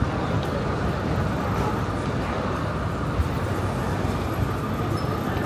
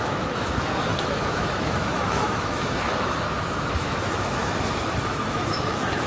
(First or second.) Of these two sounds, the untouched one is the first